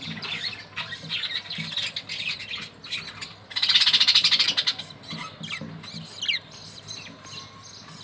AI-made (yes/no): no